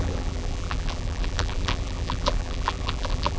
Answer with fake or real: fake